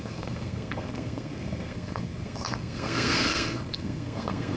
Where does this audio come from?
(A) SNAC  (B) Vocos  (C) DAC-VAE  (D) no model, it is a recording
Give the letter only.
A